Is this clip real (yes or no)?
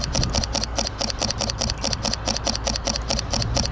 yes